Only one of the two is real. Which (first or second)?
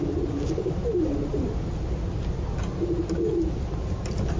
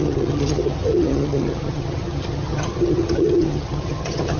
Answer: first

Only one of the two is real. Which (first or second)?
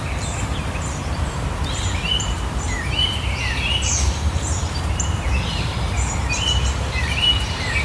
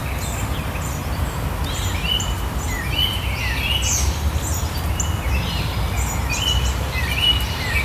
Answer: second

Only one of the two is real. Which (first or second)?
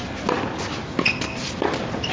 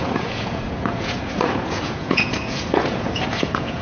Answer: first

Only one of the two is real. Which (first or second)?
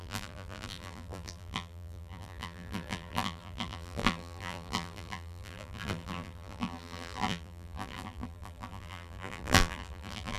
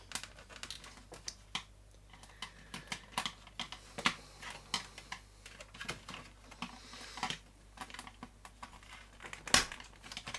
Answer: second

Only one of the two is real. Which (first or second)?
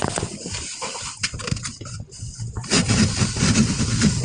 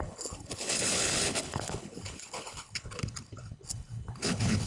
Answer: first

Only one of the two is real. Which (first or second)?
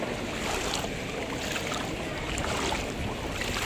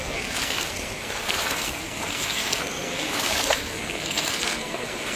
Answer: first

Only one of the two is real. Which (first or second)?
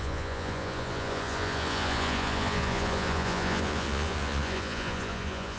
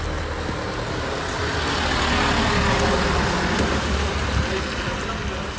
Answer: second